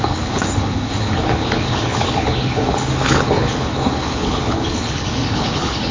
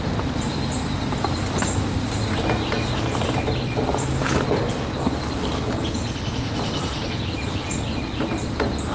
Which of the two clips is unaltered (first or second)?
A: second